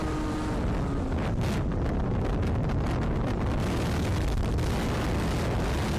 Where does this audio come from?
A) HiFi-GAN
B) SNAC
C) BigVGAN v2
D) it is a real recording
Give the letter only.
D